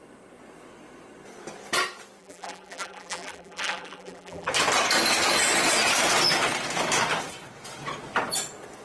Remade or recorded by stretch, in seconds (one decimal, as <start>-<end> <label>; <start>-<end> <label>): 0.0-2.2 recorded; 2.2-4.5 remade; 4.5-8.8 recorded